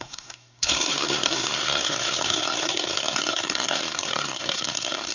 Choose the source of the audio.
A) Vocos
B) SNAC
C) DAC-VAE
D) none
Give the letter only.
B